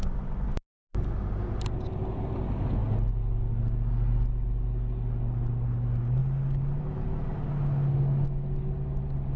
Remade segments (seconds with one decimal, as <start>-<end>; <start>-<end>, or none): none